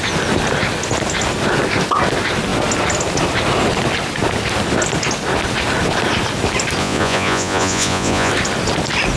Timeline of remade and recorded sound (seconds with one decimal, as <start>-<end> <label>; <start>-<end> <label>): 0.0-6.8 recorded; 6.8-8.3 remade; 8.3-9.2 recorded